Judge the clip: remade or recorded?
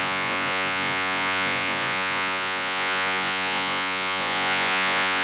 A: remade